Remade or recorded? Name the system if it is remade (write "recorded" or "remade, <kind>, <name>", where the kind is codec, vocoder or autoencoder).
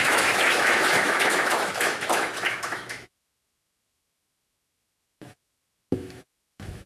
remade, autoencoder, DAC-VAE